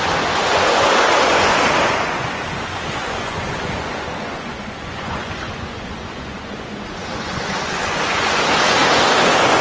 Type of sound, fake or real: fake